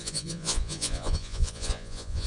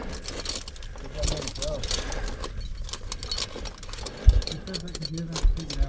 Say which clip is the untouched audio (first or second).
second